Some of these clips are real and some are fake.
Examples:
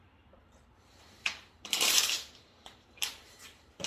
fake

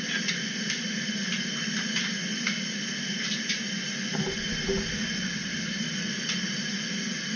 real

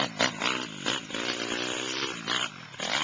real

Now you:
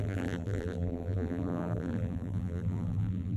fake